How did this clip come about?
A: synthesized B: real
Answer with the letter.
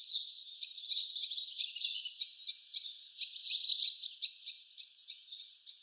A